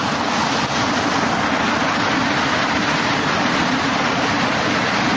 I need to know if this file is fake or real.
real